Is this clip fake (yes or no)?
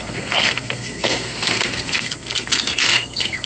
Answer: yes